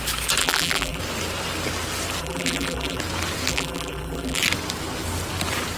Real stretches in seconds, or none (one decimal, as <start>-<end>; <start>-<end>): 0.0-0.4; 1.0-2.2; 3.0-3.5; 4.4-5.8